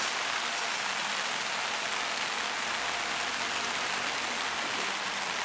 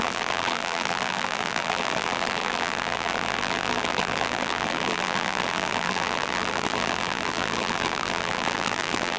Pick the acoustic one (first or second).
first